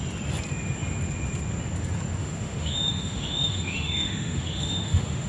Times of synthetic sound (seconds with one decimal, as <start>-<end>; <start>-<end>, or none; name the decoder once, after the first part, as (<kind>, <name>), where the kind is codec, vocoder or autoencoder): 2.2-5.3 (autoencoder, DAC-VAE)